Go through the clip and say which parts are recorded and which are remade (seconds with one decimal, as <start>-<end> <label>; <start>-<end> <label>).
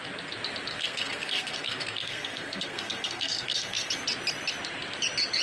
0.0-0.7 recorded; 0.7-3.9 remade; 3.9-5.4 recorded